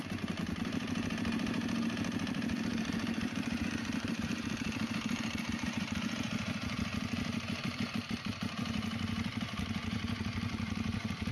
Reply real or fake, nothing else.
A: fake